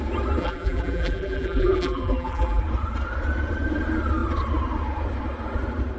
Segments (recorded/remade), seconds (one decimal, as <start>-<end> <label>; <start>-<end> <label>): 0.0-0.4 recorded; 0.4-2.6 remade; 2.6-6.0 recorded